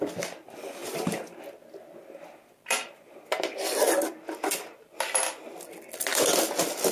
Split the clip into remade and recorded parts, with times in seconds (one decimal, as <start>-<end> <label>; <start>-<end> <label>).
0.0-6.9 recorded